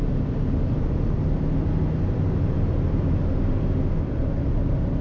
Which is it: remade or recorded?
recorded